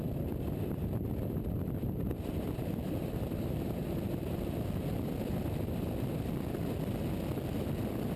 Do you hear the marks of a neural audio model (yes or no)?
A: no